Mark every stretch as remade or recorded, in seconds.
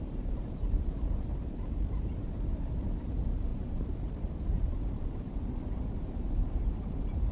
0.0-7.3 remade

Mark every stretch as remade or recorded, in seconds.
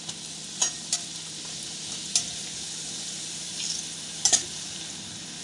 0.0-5.4 recorded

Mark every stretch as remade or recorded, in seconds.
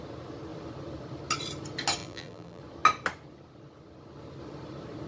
0.0-2.0 recorded; 2.0-2.6 remade; 2.6-5.1 recorded